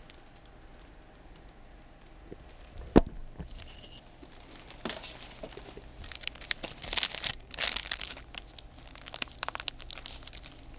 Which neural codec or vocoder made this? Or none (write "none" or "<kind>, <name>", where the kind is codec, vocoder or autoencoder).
none